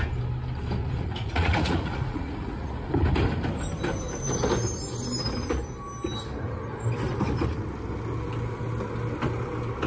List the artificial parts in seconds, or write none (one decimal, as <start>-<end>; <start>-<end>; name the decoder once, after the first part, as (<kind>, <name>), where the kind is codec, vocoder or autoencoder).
0.8-2.9 (vocoder, Vocos)